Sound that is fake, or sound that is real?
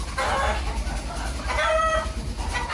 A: real